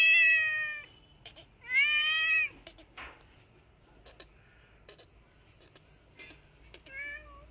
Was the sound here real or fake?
real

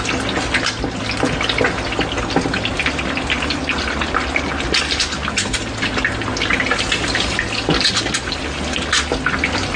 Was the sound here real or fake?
real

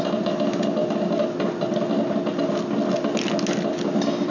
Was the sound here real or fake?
real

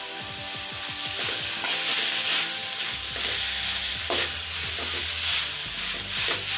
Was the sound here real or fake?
real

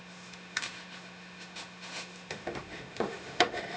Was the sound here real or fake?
fake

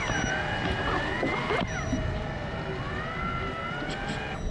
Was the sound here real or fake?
real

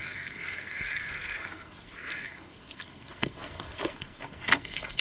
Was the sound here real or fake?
fake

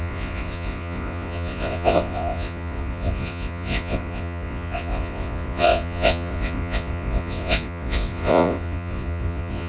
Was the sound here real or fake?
fake